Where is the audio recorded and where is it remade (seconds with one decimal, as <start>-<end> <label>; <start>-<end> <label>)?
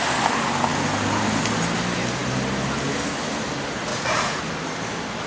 0.0-3.9 recorded; 3.9-4.4 remade; 4.4-5.3 recorded